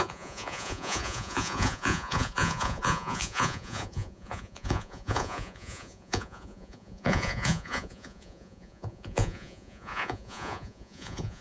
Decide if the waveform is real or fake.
fake